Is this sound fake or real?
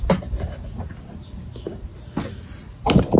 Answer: real